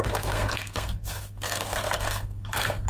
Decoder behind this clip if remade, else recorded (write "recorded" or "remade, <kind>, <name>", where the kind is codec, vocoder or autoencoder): remade, codec, SNAC